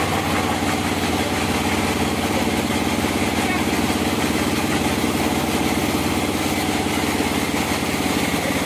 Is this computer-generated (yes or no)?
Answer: no